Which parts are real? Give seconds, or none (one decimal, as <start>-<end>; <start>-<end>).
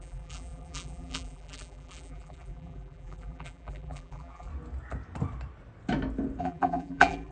4.5-6.4